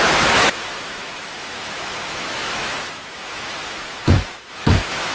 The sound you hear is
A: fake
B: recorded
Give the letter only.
A